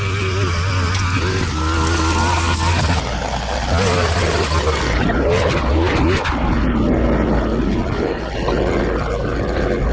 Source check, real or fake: real